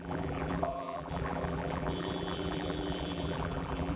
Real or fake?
fake